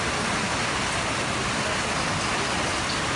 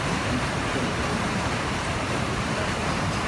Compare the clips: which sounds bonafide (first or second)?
first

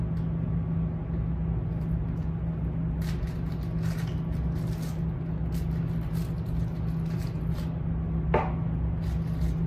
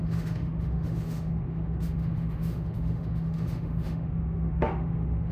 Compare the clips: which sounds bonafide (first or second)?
first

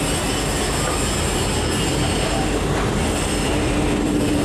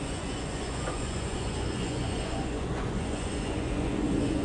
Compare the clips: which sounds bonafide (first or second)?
first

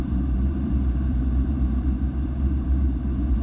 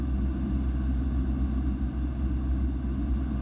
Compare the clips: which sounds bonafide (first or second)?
second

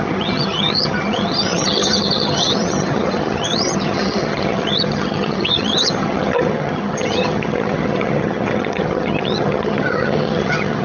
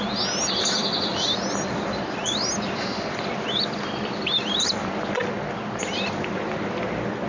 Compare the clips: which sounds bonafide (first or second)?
second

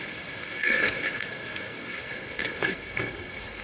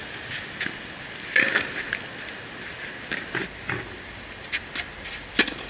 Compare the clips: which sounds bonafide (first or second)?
second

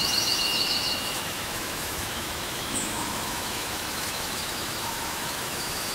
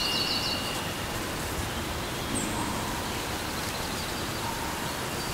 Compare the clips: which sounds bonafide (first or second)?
second